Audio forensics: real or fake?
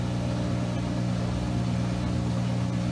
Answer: real